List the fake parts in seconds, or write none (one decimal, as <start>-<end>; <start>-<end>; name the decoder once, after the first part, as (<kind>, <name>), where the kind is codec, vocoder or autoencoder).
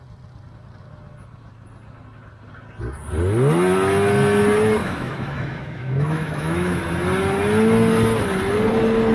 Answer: 4.8-6.8 (autoencoder, DAC-VAE)